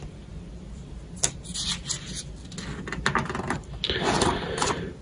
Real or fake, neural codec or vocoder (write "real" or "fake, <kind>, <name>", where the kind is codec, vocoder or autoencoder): real